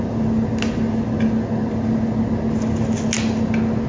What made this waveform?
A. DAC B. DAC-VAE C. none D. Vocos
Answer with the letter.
C